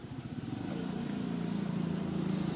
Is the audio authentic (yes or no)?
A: yes